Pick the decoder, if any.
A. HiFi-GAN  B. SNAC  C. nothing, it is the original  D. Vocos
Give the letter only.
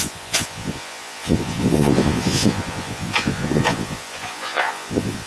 D